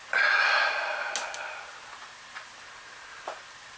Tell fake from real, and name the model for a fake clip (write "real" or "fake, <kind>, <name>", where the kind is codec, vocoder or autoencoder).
real